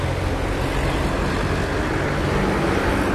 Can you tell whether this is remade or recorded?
recorded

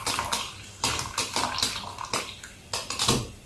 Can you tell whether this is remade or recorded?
recorded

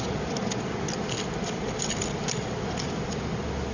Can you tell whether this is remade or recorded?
remade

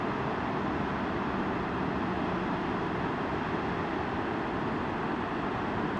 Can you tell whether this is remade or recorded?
recorded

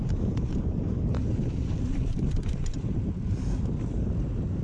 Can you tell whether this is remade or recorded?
remade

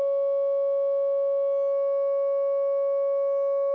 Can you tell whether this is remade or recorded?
recorded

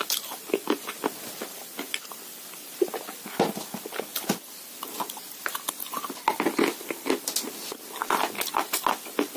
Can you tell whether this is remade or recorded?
recorded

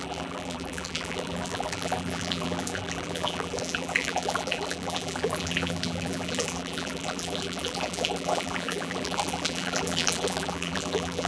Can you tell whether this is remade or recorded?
remade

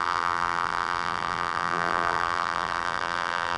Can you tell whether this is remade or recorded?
remade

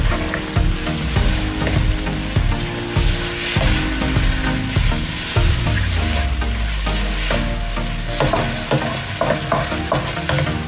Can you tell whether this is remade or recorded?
recorded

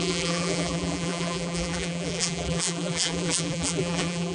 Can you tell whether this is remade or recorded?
remade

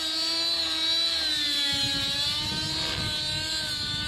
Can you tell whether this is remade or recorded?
recorded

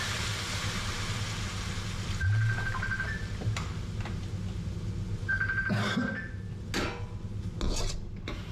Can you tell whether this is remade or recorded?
recorded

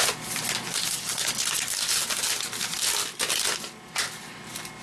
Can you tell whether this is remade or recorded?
recorded